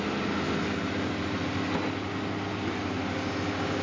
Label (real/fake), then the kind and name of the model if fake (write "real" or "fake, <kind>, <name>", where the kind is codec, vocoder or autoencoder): real